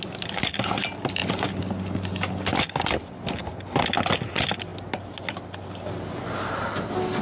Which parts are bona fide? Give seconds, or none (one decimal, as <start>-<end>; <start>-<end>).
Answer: 0.0-7.2